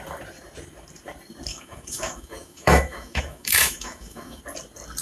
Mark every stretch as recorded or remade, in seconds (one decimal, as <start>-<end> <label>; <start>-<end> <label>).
0.0-1.5 recorded; 1.5-4.4 remade; 4.4-5.0 recorded

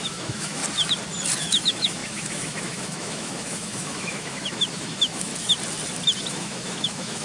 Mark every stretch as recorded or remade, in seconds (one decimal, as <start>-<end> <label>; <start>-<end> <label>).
0.0-0.6 remade; 0.6-1.4 recorded; 1.4-5.3 remade; 5.3-6.3 recorded; 6.3-7.2 remade

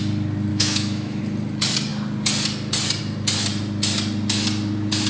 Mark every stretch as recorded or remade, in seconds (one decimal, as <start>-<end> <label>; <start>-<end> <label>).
0.0-0.5 recorded; 0.5-1.2 remade; 1.2-5.1 recorded

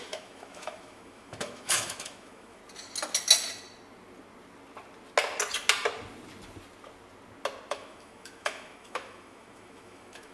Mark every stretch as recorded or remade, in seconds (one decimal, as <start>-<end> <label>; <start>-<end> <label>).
0.0-2.6 remade; 2.6-7.7 recorded; 7.7-10.3 remade